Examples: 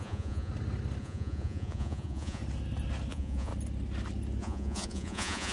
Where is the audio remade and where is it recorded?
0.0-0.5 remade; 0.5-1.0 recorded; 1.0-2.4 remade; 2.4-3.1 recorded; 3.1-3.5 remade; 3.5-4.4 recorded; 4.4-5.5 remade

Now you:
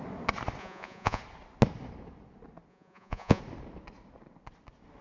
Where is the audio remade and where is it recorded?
0.0-0.6 recorded; 0.6-1.2 remade; 1.2-2.7 recorded; 2.7-3.4 remade; 3.4-5.0 recorded

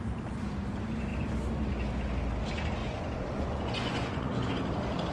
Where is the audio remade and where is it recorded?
0.0-2.8 recorded; 2.8-4.5 remade; 4.5-5.1 recorded

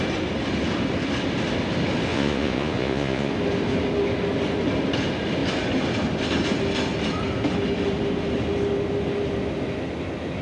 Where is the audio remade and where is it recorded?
0.0-2.1 recorded; 2.1-3.3 remade; 3.3-10.4 recorded

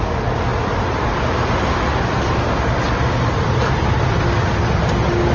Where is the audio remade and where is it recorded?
0.0-5.3 recorded

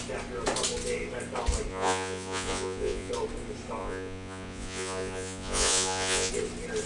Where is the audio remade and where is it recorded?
0.0-1.7 recorded; 1.7-3.1 remade; 3.1-3.8 recorded; 3.8-6.3 remade; 6.3-6.9 recorded

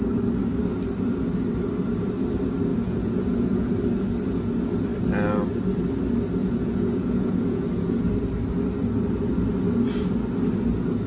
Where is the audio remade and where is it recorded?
0.0-2.7 recorded; 2.7-3.7 remade; 3.7-6.4 recorded; 6.4-8.1 remade; 8.1-11.1 recorded